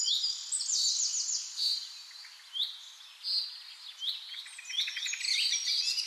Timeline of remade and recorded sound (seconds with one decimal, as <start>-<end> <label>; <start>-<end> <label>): 0.0-1.8 remade; 1.8-4.8 recorded; 4.8-6.1 remade